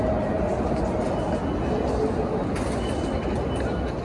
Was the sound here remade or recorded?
recorded